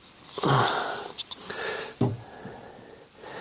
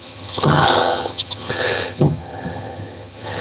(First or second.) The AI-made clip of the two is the second